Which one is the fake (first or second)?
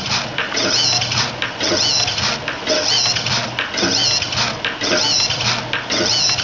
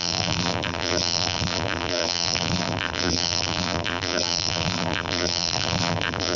second